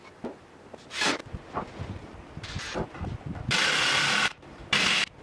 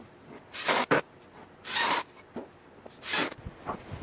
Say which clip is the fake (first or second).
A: first